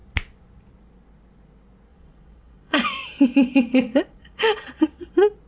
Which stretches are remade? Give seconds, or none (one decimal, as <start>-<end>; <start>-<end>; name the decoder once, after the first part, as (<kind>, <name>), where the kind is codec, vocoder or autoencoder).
1.9-5.1 (vocoder, Vocos)